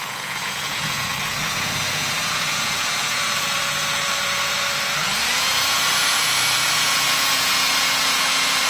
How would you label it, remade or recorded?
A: remade